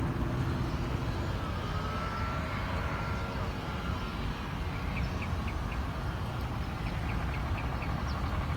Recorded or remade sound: recorded